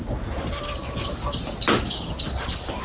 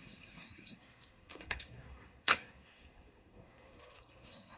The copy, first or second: second